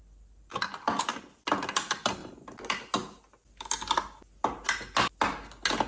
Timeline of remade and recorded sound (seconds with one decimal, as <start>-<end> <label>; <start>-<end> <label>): 0.0-5.9 recorded